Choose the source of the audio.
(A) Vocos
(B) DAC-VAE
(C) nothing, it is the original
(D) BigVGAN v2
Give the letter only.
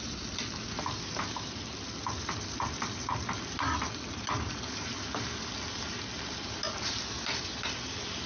C